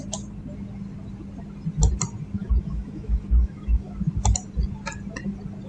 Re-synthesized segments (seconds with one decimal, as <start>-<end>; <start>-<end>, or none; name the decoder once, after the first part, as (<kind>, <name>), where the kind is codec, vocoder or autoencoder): 2.4-3.9 (autoencoder, DAC-VAE)